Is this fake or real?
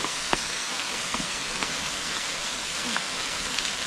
fake